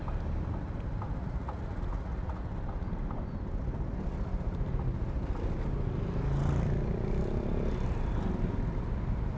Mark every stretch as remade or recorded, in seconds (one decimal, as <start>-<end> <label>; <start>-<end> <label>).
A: 0.0-1.2 recorded; 1.2-2.4 remade; 2.4-9.4 recorded